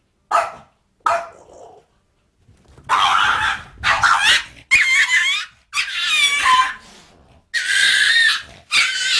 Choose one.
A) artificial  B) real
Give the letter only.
B